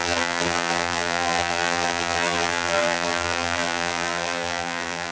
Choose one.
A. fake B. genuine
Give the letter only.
A